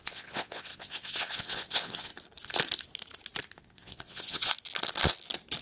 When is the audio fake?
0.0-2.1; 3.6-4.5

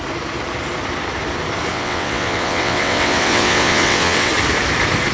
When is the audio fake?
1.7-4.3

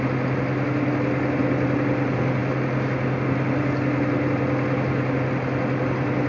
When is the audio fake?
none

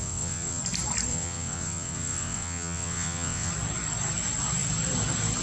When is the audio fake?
0.0-0.6; 1.1-3.5

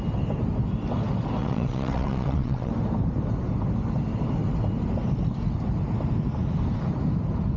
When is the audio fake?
1.4-2.7

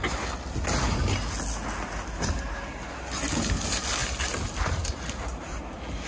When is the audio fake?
none

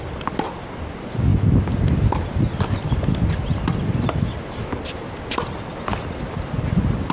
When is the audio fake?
none